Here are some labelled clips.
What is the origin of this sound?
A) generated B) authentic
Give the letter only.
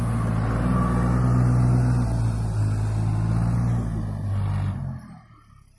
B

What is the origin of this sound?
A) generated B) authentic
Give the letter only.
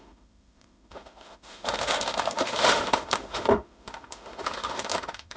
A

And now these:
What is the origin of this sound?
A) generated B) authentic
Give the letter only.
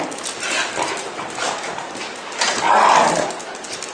B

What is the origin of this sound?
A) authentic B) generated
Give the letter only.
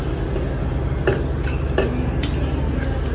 A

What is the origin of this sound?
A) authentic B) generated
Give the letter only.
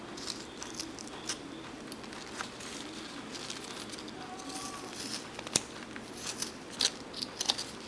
A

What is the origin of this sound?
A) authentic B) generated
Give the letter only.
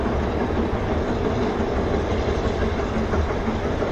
A